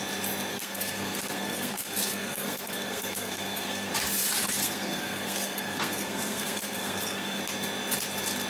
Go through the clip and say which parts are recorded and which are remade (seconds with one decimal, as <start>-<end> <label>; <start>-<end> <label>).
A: 0.0-0.5 recorded; 0.5-3.9 remade; 3.9-4.6 recorded; 4.6-7.4 remade; 7.4-8.5 recorded